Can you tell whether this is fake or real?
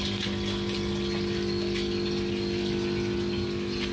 real